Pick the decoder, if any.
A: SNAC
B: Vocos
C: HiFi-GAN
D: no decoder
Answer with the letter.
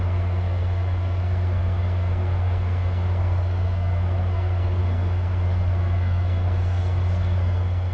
A